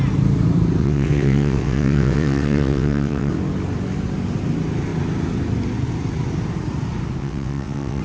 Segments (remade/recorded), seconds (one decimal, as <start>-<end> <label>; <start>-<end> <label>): 0.0-0.8 recorded; 0.8-3.3 remade; 3.3-7.2 recorded; 7.2-8.0 remade